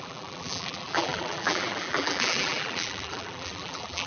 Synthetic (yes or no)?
yes